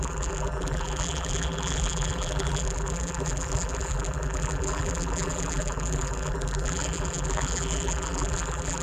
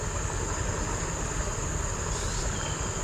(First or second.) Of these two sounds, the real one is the second